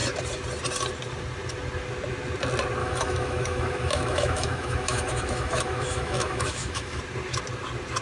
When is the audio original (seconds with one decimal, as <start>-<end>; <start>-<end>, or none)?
0.0-2.8; 7.0-8.0